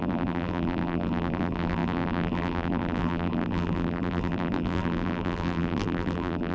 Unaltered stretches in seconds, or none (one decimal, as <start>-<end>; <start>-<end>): none